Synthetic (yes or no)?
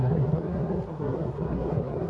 yes